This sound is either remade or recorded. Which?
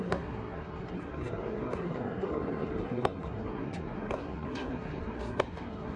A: remade